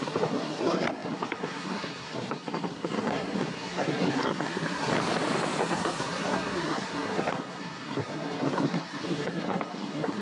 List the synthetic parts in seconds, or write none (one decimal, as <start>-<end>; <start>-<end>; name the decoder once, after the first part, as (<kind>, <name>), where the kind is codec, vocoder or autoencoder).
0.0-4.9 (codec, SNAC); 5.6-10.2